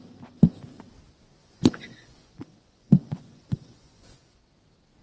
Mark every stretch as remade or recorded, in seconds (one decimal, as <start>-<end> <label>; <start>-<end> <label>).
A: 0.0-1.4 recorded; 1.4-4.4 remade; 4.4-5.0 recorded